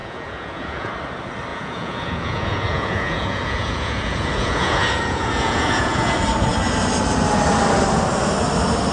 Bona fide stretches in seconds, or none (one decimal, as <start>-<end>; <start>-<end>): 0.9-1.5; 6.1-8.9

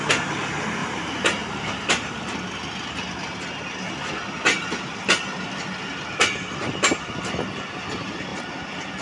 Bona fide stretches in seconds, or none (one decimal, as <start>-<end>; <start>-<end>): 0.0-0.8; 2.2-9.0

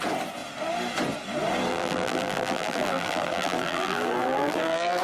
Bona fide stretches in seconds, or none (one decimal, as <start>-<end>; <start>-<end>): 0.0-1.7

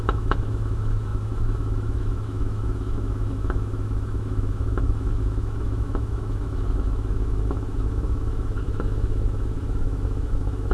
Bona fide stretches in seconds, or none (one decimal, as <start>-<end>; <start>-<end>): none

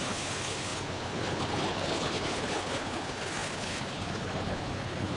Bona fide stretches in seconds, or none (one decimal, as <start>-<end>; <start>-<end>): none

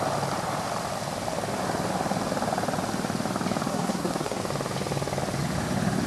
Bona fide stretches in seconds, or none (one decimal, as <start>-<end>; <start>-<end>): 0.0-3.7; 4.4-6.1